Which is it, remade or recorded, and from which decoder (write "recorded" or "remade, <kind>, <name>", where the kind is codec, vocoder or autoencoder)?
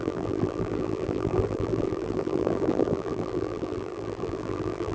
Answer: remade, vocoder, BigVGAN v2